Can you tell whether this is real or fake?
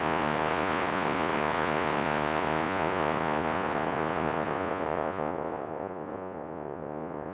fake